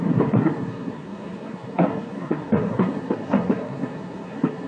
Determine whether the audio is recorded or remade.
remade